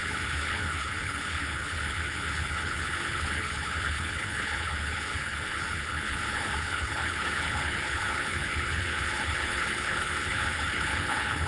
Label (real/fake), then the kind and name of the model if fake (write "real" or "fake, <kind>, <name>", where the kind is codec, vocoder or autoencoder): fake, codec, HILCodec